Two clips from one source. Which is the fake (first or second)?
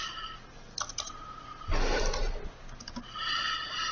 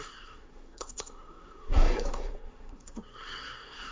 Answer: second